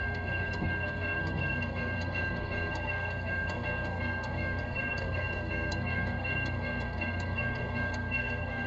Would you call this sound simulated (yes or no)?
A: yes